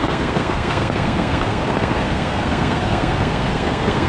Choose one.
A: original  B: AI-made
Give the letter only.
B